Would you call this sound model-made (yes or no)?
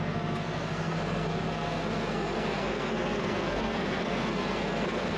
yes